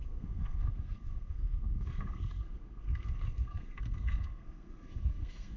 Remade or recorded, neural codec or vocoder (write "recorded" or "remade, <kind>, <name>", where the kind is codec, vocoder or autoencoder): remade, codec, SNAC